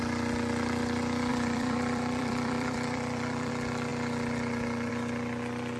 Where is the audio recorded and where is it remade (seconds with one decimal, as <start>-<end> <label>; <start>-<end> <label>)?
0.0-1.3 recorded; 1.3-3.5 remade; 3.5-5.8 recorded